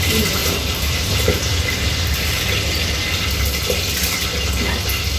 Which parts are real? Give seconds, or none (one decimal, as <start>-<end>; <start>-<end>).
0.0-0.4; 2.4-5.2